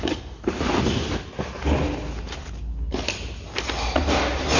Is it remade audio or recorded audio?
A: recorded